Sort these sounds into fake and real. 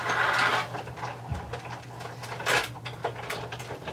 real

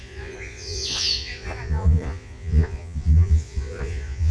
fake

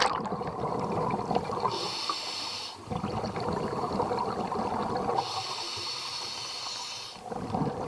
real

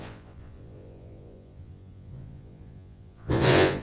fake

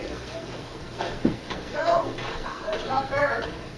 fake